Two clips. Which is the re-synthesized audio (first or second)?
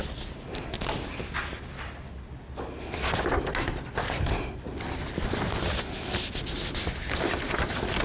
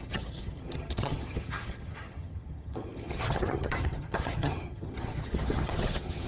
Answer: second